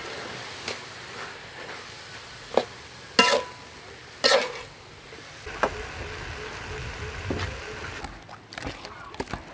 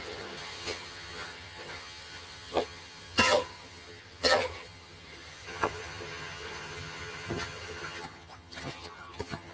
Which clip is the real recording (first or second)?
first